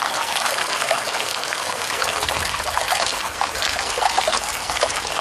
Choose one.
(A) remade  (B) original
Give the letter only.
A